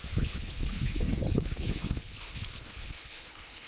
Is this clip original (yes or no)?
no